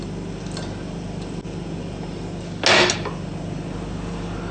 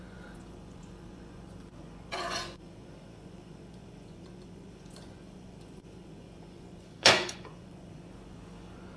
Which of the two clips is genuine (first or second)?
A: first